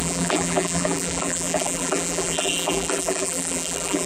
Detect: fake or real fake